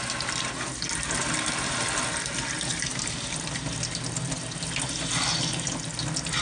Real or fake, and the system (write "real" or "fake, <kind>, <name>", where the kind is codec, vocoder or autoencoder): real